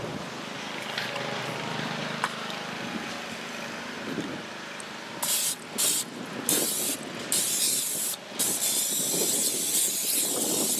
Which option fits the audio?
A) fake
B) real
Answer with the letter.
A